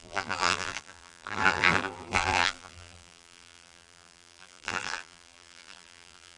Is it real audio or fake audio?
fake